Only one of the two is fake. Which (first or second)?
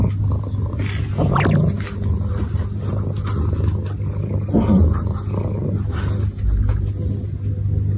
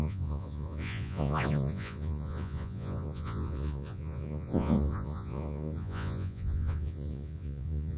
second